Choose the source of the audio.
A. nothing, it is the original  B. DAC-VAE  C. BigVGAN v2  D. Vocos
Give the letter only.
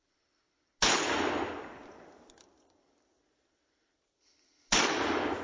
A